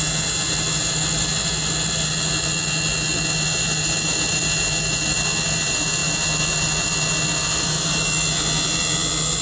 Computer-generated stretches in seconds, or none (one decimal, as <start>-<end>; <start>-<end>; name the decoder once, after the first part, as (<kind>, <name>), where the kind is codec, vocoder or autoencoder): none